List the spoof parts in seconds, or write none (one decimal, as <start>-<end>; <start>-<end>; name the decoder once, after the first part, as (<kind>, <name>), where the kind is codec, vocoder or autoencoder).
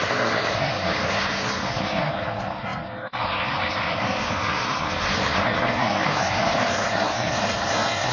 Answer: 0.0-8.1 (codec, SNAC)